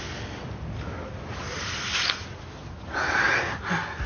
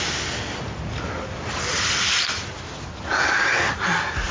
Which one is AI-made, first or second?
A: second